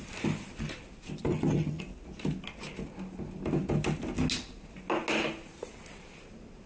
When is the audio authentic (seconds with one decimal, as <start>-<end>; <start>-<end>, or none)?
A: 0.0-1.3; 1.8-6.7